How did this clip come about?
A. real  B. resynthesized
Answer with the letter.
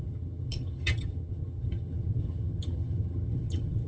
B